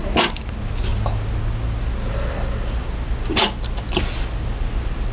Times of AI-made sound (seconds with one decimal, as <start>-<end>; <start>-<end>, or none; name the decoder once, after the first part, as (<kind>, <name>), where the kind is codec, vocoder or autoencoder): none